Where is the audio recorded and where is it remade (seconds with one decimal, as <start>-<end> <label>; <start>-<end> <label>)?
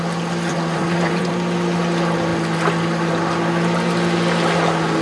0.0-0.5 recorded; 0.5-1.3 remade; 1.3-5.0 recorded